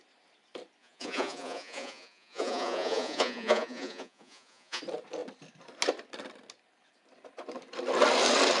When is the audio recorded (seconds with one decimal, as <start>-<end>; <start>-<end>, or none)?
0.0-0.8; 4.8-8.6